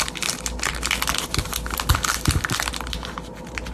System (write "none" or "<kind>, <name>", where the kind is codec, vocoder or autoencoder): none